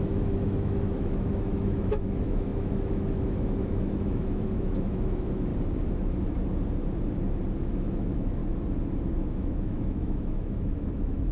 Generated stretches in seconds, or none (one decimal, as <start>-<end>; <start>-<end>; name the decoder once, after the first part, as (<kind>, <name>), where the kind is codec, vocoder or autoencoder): 0.0-5.5 (autoencoder, DAC-VAE); 7.7-8.4; 9.1-11.3